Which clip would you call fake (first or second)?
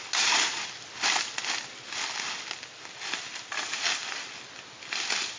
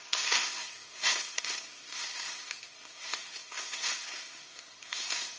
second